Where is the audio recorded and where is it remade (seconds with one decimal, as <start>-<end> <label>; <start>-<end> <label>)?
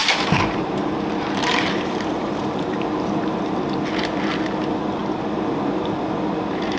0.0-3.5 remade; 3.5-6.8 recorded